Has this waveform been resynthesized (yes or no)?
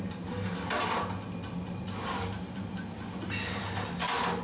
no